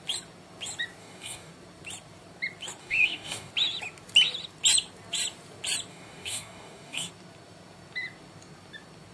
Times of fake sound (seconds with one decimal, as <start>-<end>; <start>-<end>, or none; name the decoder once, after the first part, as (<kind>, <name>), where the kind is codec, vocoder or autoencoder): 1.0-1.5 (codec, DAC); 2.8-3.5; 5.9-7.1